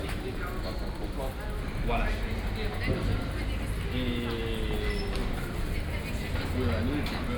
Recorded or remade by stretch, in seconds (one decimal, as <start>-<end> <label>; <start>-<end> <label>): 0.0-5.2 recorded; 5.2-6.4 remade; 6.4-7.4 recorded